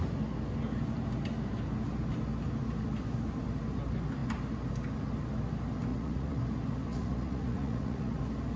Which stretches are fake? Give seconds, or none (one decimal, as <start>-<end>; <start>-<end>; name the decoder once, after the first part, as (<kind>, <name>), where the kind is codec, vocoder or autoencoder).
5.9-6.4 (vocoder, Vocos); 6.9-8.2